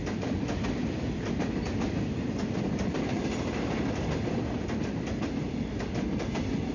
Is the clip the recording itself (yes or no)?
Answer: yes